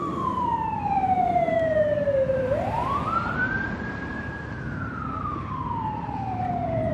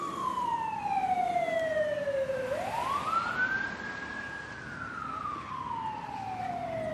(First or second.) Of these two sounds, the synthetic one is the first